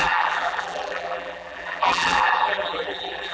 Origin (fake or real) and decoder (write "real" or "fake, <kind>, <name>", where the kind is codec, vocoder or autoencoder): fake, vocoder, BigVGAN v2